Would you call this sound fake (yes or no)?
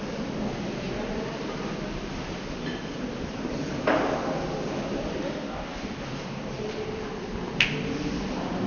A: no